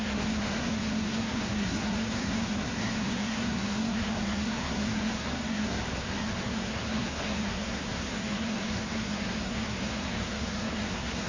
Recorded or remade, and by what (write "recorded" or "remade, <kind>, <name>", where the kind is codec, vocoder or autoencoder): remade, codec, SNAC